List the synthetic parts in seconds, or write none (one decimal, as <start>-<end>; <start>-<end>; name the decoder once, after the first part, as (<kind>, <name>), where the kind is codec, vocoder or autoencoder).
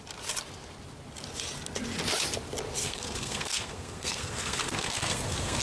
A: 2.8-5.6 (codec, SNAC)